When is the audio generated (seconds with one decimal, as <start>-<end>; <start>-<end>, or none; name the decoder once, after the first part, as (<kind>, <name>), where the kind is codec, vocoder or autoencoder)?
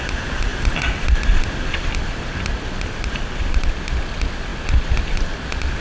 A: 0.5-2.8 (vocoder, BigVGAN v2); 4.5-5.2